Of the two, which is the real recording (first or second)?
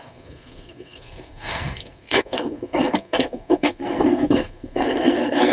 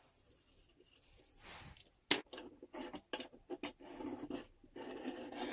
second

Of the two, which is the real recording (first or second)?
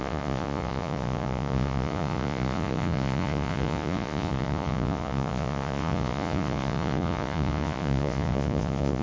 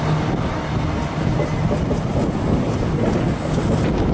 second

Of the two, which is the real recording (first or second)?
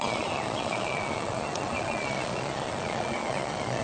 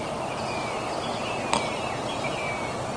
second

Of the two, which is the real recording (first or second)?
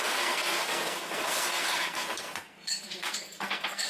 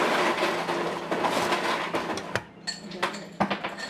second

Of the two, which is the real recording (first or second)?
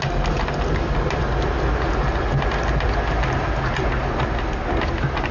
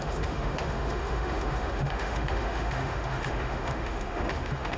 first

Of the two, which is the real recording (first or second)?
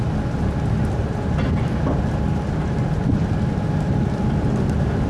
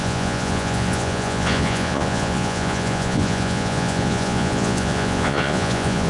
first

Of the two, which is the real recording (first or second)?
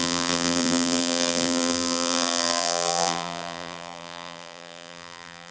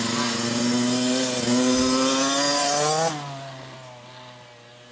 second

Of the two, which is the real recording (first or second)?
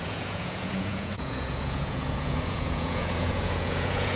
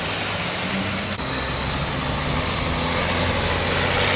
second